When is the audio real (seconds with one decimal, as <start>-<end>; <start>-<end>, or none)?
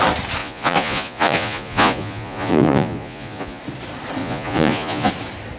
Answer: 0.0-0.4; 3.6-4.2; 5.1-5.6